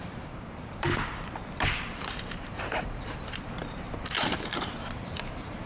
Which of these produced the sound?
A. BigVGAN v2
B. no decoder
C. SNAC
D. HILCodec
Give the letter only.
A